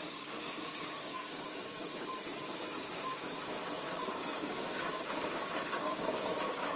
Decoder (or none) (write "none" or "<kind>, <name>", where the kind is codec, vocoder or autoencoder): codec, DAC